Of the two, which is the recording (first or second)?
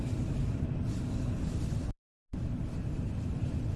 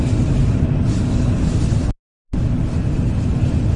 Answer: second